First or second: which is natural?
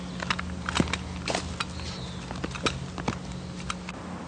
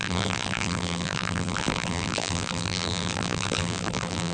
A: first